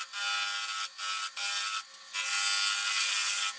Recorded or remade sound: recorded